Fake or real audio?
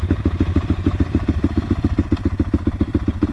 fake